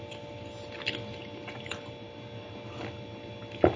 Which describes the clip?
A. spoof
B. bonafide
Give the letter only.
B